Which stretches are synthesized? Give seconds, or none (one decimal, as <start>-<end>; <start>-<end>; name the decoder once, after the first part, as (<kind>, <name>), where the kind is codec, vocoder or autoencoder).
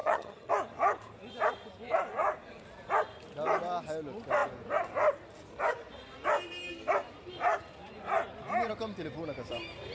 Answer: 0.0-0.5 (vocoder, HiFi-GAN)